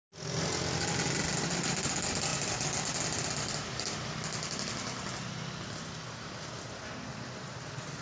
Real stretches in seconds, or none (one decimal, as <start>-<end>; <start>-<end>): 0.0-8.0